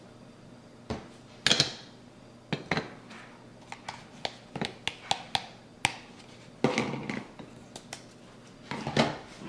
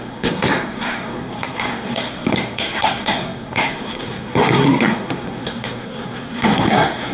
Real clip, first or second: first